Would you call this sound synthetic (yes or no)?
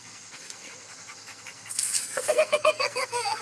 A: yes